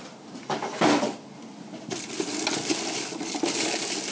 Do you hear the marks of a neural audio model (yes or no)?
no